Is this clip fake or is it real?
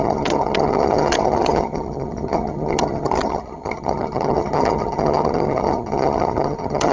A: fake